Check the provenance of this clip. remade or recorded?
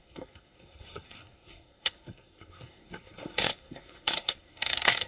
remade